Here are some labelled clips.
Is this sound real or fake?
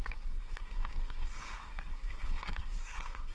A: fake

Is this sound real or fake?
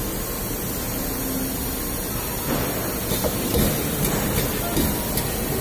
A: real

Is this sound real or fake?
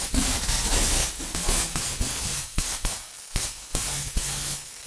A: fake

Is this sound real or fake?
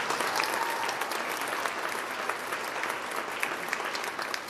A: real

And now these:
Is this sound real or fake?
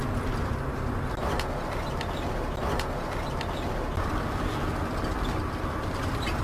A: real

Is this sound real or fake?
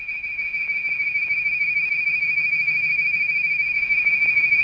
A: fake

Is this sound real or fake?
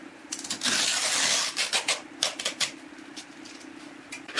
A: real